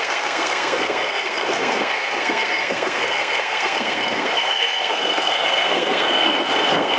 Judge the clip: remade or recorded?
remade